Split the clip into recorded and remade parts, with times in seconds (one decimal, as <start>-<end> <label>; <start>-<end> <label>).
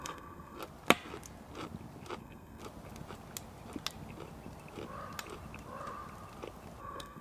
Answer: 0.0-0.6 remade; 0.6-2.2 recorded; 2.2-2.6 remade; 2.6-6.8 recorded; 6.8-7.2 remade